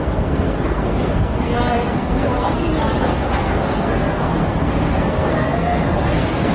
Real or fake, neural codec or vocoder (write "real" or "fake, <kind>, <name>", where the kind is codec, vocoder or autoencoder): fake, codec, SNAC